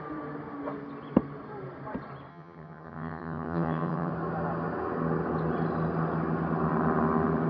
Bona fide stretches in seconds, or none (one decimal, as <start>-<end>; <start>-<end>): 0.0-2.3; 4.1-7.5